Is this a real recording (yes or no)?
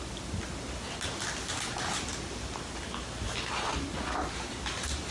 yes